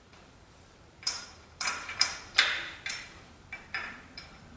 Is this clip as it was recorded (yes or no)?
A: no